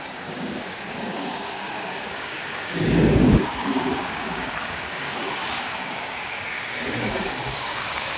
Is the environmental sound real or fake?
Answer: fake